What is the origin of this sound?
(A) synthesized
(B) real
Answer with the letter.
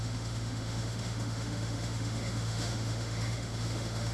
A